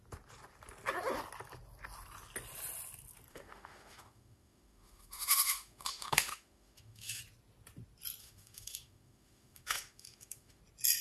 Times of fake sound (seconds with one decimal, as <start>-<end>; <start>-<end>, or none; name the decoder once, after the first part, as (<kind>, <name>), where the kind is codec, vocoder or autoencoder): 3.3-7.2 (autoencoder, DAC-VAE); 8.2-10.6